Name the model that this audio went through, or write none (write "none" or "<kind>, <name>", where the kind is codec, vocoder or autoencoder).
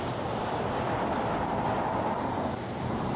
none